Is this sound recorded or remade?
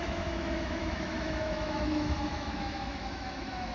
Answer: remade